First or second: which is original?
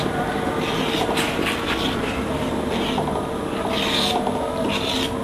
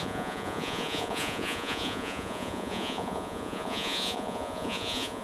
first